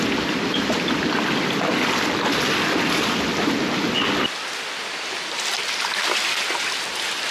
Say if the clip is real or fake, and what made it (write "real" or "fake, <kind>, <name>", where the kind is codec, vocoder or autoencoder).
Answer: real